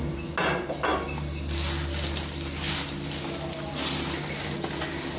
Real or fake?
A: real